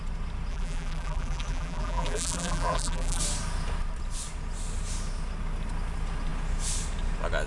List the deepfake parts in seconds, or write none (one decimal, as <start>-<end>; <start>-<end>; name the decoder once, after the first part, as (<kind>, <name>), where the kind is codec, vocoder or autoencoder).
0.5-3.2 (vocoder, BigVGAN v2)